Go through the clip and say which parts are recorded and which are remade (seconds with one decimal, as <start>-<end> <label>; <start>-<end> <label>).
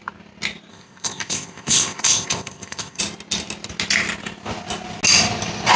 0.0-0.7 recorded; 0.7-3.0 remade; 3.0-5.8 recorded